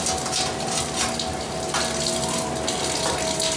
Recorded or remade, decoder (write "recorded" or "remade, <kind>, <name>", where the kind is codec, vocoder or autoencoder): recorded